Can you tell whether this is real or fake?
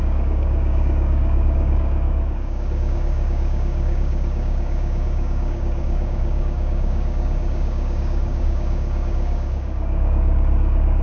fake